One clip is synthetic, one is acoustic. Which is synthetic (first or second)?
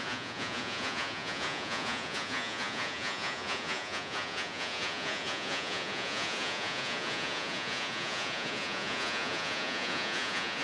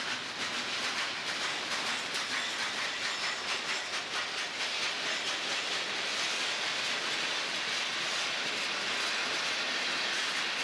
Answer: first